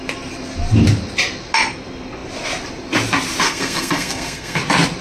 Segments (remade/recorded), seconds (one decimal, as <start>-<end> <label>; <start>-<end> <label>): 0.0-3.4 recorded; 3.4-4.6 remade; 4.6-5.0 recorded